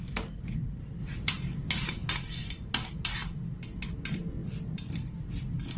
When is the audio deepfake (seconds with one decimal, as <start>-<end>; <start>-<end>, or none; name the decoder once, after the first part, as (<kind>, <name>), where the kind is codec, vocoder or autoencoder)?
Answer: 1.0-2.1 (vocoder, BigVGAN v2); 4.4-5.3